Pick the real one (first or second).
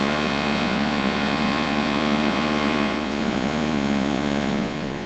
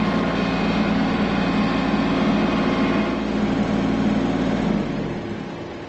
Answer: second